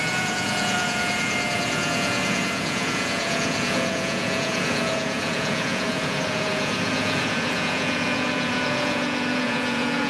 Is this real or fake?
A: fake